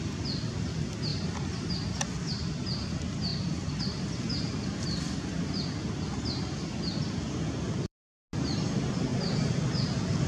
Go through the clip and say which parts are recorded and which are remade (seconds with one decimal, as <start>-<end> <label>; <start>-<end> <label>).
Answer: 0.0-1.1 recorded; 1.1-1.7 remade; 1.7-3.3 recorded; 3.3-8.1 remade; 8.1-10.3 recorded

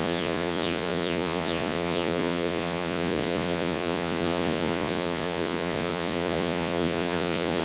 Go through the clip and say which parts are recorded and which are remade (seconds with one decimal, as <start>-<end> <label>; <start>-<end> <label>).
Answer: 0.0-7.6 remade

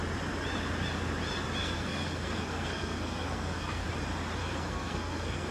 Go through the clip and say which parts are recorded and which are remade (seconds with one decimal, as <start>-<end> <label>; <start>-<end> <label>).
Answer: 0.0-1.6 recorded; 1.6-3.9 remade; 3.9-4.4 recorded; 4.4-5.5 remade

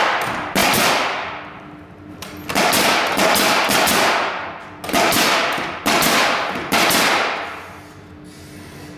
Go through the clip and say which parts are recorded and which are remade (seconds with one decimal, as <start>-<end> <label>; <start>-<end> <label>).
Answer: 0.0-9.0 recorded

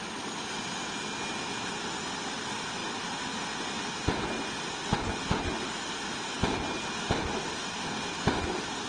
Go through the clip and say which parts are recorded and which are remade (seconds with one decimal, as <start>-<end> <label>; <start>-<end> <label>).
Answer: 0.0-8.9 recorded